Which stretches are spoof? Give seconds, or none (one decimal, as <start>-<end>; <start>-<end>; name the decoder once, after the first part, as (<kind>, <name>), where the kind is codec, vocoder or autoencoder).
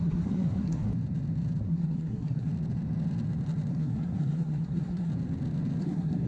0.0-0.9 (codec, SNAC); 1.6-2.5; 3.7-5.1; 5.8-6.3